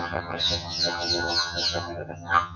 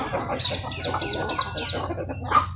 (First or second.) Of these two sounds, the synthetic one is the first